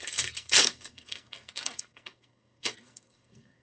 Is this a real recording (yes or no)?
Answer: no